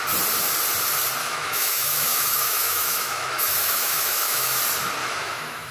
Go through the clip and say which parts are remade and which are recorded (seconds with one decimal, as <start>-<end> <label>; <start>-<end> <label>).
0.0-1.2 recorded; 1.2-4.6 remade; 4.6-5.0 recorded; 5.0-5.7 remade